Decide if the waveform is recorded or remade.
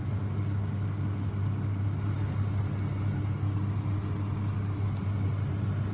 recorded